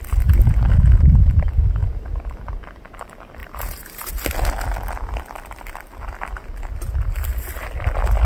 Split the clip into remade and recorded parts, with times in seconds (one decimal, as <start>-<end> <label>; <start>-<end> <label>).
0.0-3.4 recorded; 3.4-4.1 remade; 4.1-8.2 recorded